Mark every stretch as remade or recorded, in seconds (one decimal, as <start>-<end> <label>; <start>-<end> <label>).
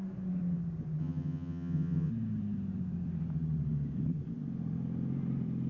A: 0.0-1.0 recorded; 1.0-2.1 remade; 2.1-5.7 recorded